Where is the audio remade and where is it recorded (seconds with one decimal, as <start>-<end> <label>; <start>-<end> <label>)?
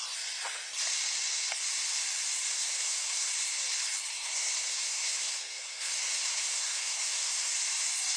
0.0-2.5 recorded; 2.5-3.3 remade; 3.3-4.1 recorded; 4.1-7.5 remade; 7.5-8.2 recorded